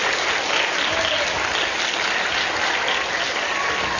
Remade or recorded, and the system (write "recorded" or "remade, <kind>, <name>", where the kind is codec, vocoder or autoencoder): recorded